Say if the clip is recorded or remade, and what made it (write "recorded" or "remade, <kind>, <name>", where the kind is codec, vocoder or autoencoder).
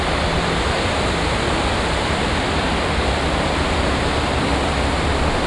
recorded